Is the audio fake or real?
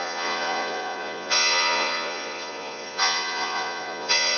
fake